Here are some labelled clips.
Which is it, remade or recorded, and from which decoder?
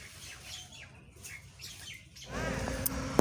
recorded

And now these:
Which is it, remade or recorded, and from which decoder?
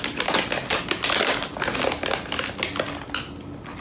recorded